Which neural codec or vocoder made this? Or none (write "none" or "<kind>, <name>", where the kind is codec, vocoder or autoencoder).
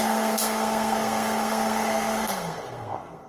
codec, SNAC